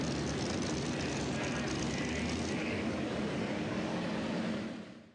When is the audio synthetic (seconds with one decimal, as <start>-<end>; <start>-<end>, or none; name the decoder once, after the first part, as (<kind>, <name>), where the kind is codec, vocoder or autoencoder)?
2.6-4.0 (codec, DAC)